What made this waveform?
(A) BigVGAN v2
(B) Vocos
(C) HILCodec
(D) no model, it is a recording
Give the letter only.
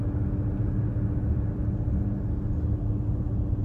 D